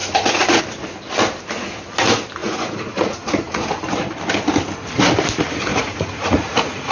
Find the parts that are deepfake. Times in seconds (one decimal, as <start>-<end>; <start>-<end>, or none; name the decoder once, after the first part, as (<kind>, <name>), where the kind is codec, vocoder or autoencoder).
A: 0.0-0.6 (vocoder, Vocos); 2.4-3.7; 5.7-6.9